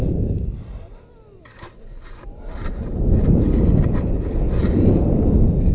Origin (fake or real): real